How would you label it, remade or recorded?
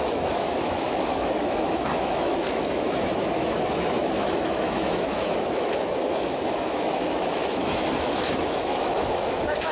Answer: remade